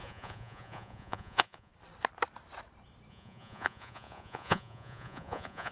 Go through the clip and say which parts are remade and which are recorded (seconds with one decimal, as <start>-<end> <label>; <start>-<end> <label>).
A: 0.0-1.7 remade; 1.7-3.1 recorded; 3.1-5.7 remade